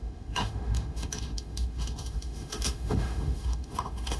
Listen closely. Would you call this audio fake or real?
fake